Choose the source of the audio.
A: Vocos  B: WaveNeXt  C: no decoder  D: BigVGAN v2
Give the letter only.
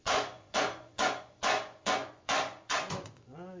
A